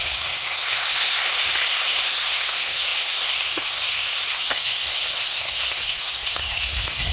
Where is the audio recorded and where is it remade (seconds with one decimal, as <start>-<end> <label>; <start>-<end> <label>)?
0.0-7.1 remade